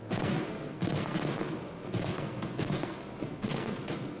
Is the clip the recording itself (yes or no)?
no